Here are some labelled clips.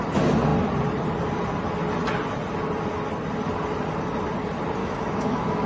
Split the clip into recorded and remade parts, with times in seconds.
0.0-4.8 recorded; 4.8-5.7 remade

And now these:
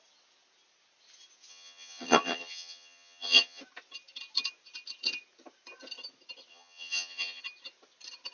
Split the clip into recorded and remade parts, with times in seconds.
0.0-1.5 recorded; 1.5-3.6 remade; 3.6-6.5 recorded; 6.5-7.4 remade; 7.4-8.3 recorded

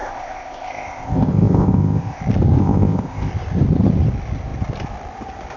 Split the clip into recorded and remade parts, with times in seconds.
0.0-2.2 remade; 2.2-2.6 recorded; 2.6-3.3 remade; 3.3-5.6 recorded

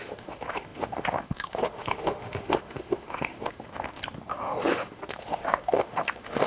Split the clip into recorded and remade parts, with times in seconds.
0.0-4.0 remade; 4.0-4.7 recorded; 4.7-6.5 remade

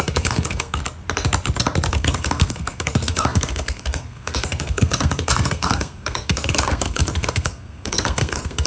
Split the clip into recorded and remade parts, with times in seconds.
0.0-0.8 remade; 0.8-1.9 recorded; 1.9-8.7 remade

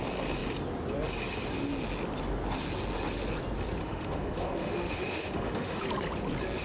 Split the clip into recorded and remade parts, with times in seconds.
0.0-3.8 recorded; 3.8-5.8 remade; 5.8-6.6 recorded